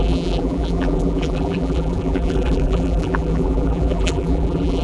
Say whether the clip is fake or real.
fake